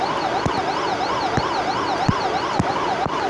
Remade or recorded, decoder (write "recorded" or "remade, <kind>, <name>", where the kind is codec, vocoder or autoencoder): recorded